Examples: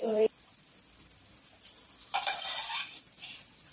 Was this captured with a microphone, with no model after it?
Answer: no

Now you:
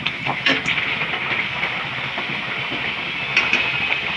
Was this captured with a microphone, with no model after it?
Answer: yes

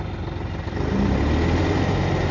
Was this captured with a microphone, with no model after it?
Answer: yes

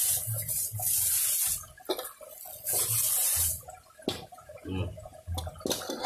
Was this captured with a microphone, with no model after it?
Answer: yes